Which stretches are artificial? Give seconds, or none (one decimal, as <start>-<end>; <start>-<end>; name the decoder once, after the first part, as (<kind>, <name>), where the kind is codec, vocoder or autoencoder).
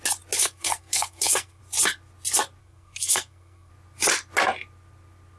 0.4-1.6 (codec, SNAC); 2.6-3.7